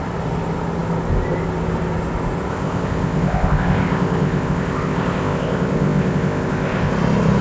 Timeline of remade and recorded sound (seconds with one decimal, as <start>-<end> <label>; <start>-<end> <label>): 0.0-2.5 recorded; 2.5-6.9 remade; 6.9-7.4 recorded